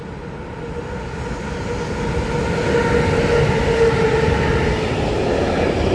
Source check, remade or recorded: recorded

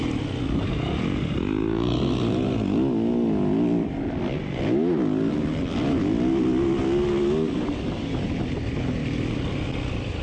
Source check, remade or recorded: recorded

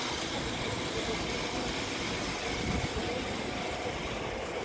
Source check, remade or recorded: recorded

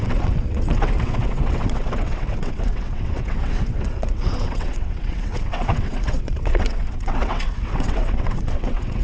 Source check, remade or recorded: remade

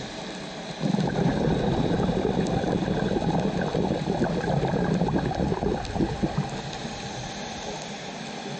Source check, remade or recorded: recorded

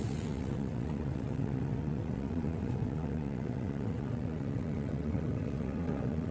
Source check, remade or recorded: remade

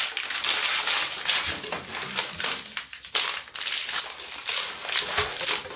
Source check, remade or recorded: recorded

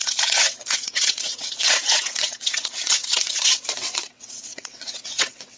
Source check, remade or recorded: remade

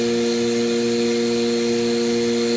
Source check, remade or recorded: recorded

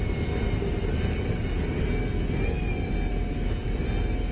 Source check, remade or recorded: recorded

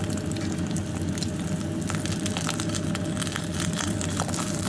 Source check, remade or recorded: recorded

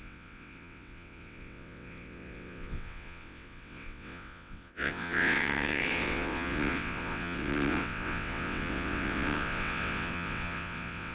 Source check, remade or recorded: remade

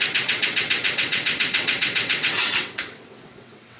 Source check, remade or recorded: remade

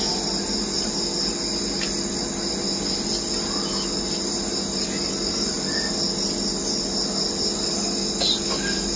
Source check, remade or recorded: recorded